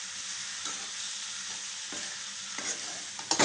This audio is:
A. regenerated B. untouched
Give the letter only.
B